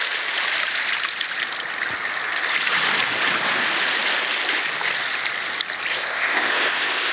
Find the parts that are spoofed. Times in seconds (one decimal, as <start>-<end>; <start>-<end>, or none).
5.9-7.1